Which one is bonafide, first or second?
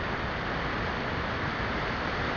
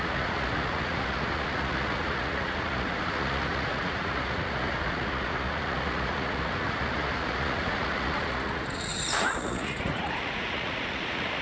first